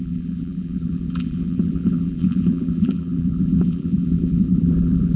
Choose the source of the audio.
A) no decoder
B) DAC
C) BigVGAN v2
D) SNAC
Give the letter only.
C